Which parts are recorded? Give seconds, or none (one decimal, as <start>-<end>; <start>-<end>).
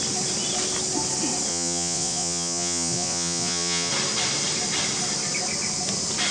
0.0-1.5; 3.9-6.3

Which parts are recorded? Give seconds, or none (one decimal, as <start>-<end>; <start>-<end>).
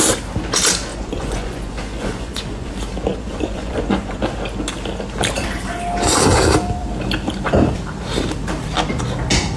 0.0-0.9; 2.7-3.1; 4.2-9.6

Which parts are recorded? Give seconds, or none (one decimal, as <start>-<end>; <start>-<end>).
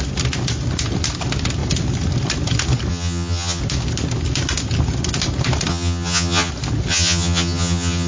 0.0-2.9; 3.6-5.7; 6.5-6.9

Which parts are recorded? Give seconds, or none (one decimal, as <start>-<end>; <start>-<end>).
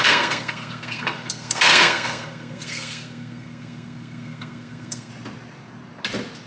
5.1-6.5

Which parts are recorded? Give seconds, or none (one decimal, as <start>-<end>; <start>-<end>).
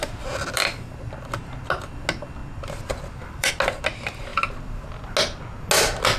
0.6-2.4; 3.5-6.2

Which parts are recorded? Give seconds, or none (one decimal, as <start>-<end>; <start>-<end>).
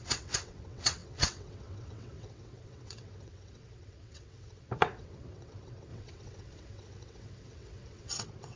none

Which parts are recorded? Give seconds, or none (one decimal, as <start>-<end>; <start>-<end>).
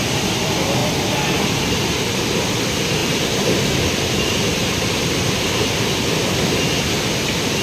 0.0-3.0; 3.8-4.5; 6.0-7.6